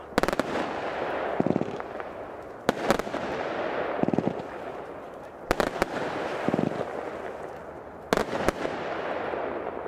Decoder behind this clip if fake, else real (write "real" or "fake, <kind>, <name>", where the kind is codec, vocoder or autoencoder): real